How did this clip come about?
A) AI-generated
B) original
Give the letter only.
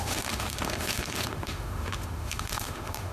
A